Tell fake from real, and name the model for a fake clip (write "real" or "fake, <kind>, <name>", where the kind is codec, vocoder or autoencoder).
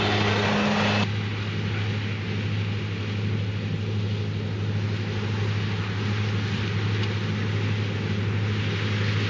real